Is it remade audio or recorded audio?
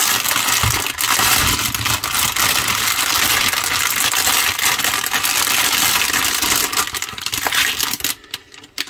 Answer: recorded